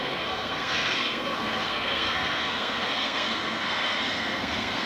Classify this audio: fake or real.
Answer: fake